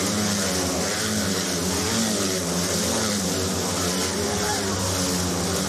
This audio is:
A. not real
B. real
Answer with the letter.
B